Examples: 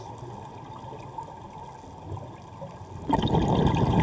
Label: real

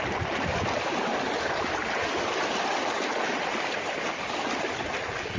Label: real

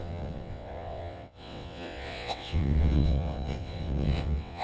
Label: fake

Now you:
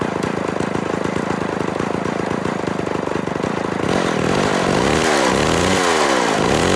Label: real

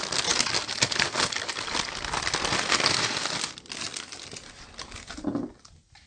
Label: real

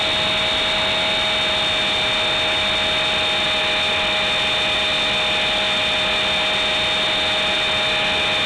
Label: real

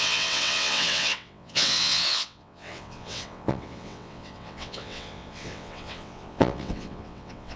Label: fake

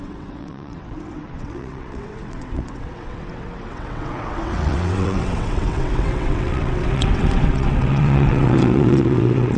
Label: fake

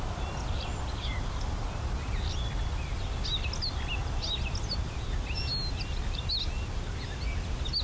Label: real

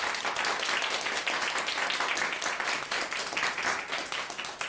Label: real